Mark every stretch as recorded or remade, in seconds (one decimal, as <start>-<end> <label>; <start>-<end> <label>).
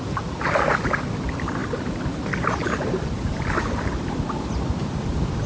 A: 0.0-5.5 recorded